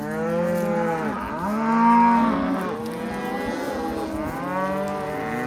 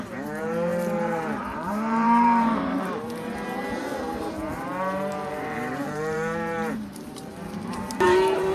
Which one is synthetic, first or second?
second